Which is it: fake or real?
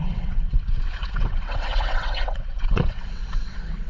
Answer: fake